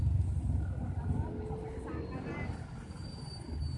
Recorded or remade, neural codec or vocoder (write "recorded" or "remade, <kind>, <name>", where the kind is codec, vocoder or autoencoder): recorded